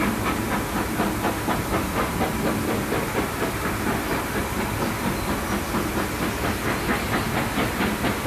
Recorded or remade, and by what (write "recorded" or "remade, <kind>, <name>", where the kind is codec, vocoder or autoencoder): recorded